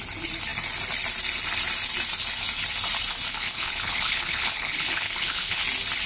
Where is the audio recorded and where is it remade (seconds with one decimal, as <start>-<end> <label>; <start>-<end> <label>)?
0.0-3.3 recorded; 3.3-5.6 remade; 5.6-6.1 recorded